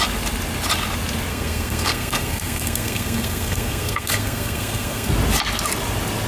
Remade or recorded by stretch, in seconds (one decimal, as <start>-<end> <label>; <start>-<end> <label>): 0.0-1.3 recorded; 1.3-5.1 remade; 5.1-6.3 recorded

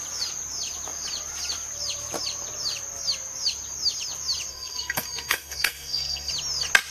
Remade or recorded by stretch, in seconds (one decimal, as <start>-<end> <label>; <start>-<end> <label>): 0.0-4.5 recorded; 4.5-6.3 remade; 6.3-6.9 recorded

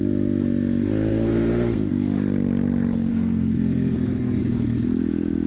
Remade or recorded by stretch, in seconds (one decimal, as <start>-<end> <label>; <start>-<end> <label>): 0.0-1.1 recorded; 1.1-1.9 remade; 1.9-3.1 recorded; 3.1-4.4 remade; 4.4-5.5 recorded

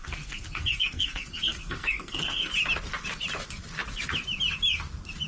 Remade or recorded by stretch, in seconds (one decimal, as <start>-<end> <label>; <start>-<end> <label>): 0.0-2.5 remade; 2.5-5.3 recorded